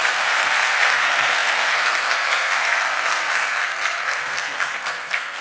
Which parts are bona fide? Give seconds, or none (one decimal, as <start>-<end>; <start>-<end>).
none